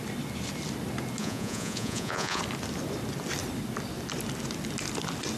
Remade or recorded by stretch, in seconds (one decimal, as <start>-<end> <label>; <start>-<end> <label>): 0.0-1.2 recorded; 1.2-2.4 remade; 2.4-5.4 recorded